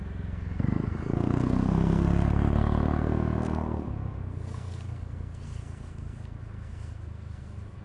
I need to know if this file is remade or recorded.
remade